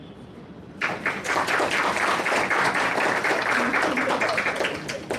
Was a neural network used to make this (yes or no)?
no